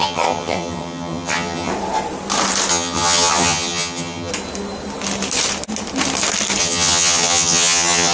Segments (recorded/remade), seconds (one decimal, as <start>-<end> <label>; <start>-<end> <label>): 0.0-1.7 remade; 1.7-2.7 recorded; 2.7-4.3 remade; 4.3-6.6 recorded; 6.6-8.1 remade